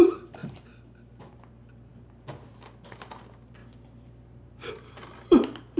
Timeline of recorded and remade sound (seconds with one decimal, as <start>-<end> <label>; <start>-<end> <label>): 0.0-5.8 recorded